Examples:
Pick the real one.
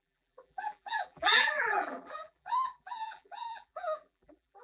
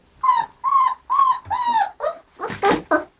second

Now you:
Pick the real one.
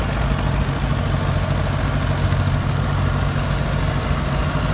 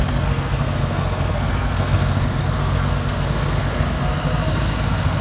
first